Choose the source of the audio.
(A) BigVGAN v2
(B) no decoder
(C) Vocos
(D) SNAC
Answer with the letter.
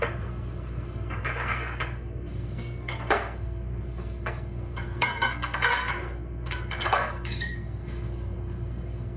D